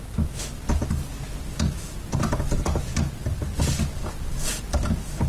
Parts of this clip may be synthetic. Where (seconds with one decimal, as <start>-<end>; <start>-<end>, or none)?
none